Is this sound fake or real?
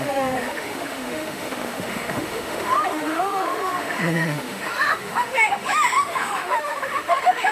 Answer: fake